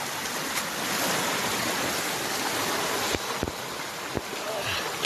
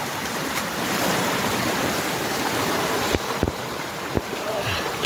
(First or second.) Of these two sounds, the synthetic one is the second